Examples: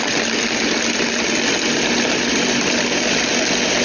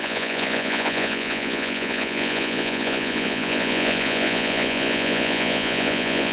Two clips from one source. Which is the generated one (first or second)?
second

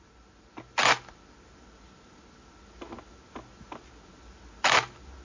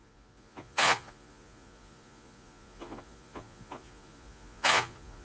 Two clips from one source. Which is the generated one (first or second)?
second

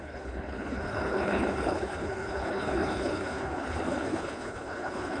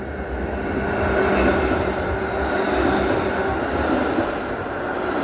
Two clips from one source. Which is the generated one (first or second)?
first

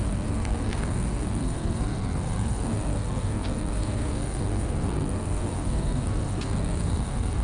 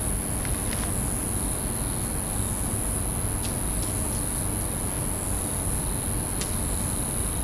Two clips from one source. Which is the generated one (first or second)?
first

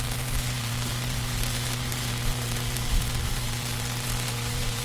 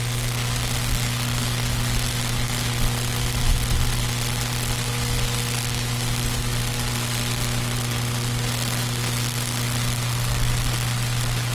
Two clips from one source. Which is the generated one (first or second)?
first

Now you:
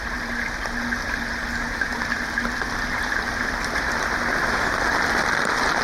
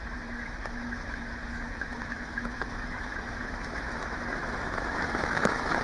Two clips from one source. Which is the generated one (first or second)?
second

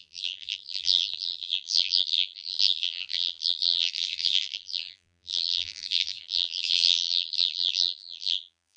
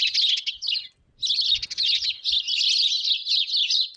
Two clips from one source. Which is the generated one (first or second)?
first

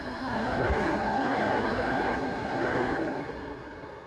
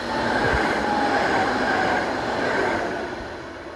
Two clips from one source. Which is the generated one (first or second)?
first